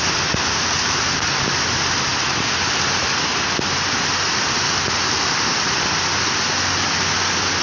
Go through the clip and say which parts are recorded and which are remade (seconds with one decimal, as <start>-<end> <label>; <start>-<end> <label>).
0.0-7.6 recorded